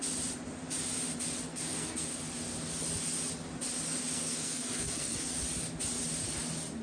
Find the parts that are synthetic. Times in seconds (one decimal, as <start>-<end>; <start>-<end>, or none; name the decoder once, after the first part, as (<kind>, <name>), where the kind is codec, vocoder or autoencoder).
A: 1.5-2.2 (codec, SNAC); 4.1-5.4